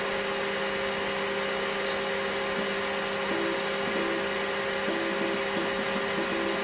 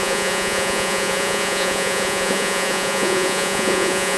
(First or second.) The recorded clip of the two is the first